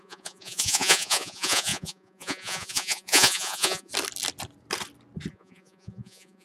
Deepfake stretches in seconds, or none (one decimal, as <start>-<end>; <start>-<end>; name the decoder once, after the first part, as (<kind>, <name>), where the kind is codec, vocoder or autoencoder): 0.0-3.9 (vocoder, Vocos); 5.3-6.4